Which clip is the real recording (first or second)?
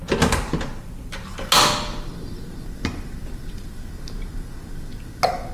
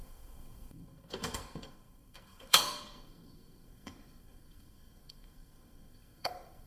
first